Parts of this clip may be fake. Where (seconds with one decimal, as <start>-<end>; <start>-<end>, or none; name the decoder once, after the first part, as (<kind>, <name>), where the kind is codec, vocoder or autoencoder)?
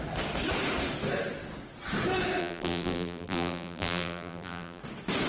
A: 2.4-4.8 (vocoder, BigVGAN v2)